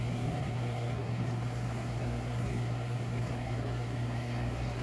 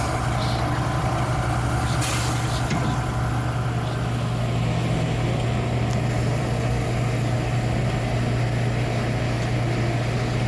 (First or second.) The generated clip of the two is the first